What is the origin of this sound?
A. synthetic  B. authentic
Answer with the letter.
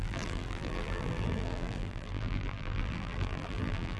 A